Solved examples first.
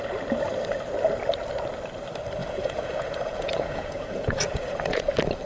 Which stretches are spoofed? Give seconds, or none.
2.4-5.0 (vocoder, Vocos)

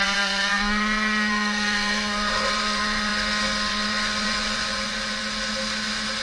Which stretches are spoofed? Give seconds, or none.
0.0-3.1 (vocoder, Vocos); 3.7-5.2